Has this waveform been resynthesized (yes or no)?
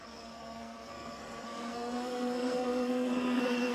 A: yes